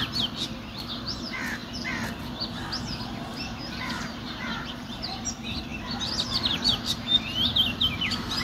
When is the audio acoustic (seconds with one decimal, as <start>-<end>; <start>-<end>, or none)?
0.0-3.3; 4.6-8.4

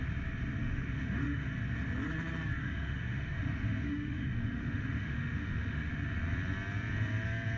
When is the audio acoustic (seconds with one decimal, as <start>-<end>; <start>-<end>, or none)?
0.0-0.6; 1.5-2.6; 5.9-7.6